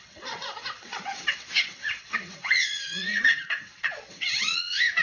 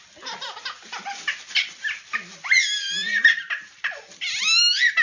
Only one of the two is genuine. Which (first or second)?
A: second